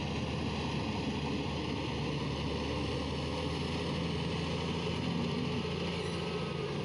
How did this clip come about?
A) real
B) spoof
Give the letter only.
A